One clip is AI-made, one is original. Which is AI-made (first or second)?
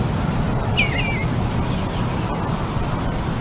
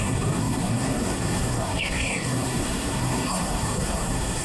second